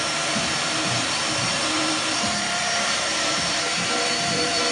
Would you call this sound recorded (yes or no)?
no